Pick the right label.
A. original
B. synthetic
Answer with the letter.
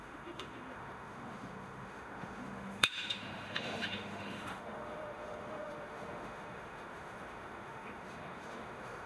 B